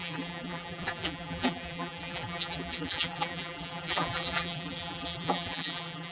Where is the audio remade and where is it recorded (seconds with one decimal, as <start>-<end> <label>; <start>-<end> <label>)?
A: 0.0-6.1 remade